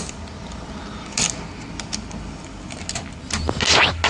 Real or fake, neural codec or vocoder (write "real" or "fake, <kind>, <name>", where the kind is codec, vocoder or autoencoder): real